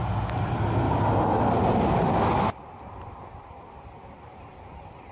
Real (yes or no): yes